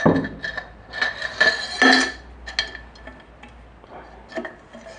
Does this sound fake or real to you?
real